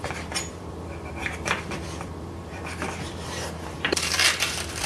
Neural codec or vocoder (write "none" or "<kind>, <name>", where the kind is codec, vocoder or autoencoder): vocoder, BigVGAN v2